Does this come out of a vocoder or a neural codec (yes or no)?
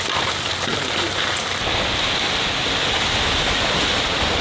yes